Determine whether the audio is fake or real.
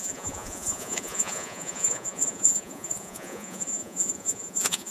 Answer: fake